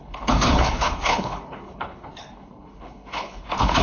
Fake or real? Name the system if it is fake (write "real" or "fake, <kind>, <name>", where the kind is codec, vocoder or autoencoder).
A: fake, codec, HILCodec